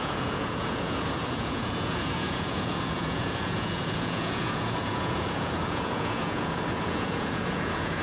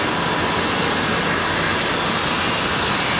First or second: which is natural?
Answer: second